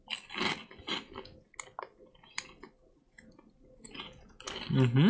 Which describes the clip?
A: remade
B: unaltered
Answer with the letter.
B